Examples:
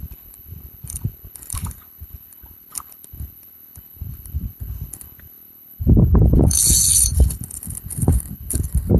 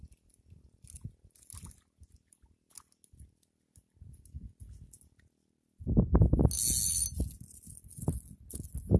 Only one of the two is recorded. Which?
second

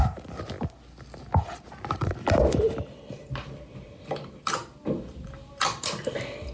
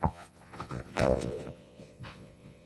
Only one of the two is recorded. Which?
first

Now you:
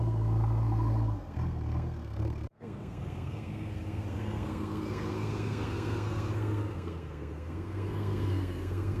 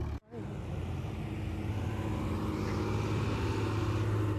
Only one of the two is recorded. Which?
second